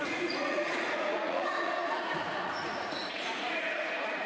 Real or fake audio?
fake